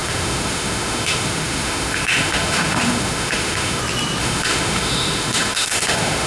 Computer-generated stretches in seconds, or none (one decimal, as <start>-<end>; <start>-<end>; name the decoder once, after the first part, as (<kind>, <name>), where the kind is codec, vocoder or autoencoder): 0.0-3.8 (autoencoder, DAC-VAE); 4.2-6.3